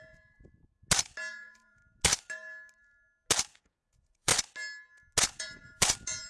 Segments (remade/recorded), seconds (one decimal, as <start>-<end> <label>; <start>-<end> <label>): 0.0-0.5 remade; 0.5-1.3 recorded; 1.3-1.8 remade; 1.8-3.6 recorded; 3.6-4.3 remade; 4.3-5.2 recorded; 5.2-6.3 remade